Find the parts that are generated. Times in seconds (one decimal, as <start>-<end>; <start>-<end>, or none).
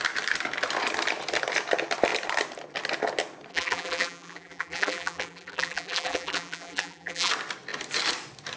3.5-7.3